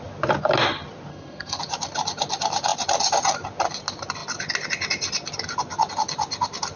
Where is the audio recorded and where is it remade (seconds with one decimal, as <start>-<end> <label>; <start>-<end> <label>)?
0.0-1.1 recorded; 1.1-1.6 remade; 1.6-6.8 recorded